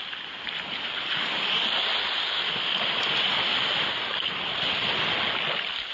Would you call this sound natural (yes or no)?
yes